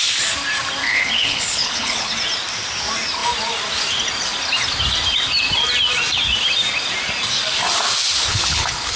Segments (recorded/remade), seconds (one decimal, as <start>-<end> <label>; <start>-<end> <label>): 0.0-0.8 recorded; 0.8-2.1 remade; 2.1-8.3 recorded; 8.3-9.0 remade